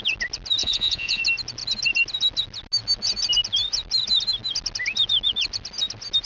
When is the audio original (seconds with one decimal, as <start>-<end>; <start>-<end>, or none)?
0.0-0.6; 1.2-6.2